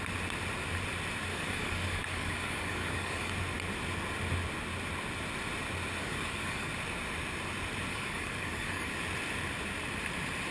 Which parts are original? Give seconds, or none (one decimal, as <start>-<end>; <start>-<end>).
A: 0.0-1.3; 3.3-6.0; 6.7-7.9; 8.9-10.5